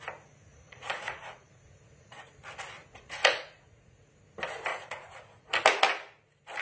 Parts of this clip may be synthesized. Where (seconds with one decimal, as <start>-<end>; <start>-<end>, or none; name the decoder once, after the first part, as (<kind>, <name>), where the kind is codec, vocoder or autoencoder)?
0.5-2.4 (vocoder, Vocos); 2.8-4.1; 4.7-5.5